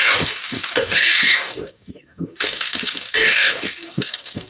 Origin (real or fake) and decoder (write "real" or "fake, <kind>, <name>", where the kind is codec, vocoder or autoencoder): fake, codec, DAC